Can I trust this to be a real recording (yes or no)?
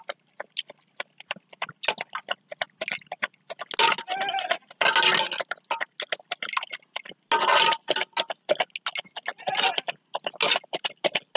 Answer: yes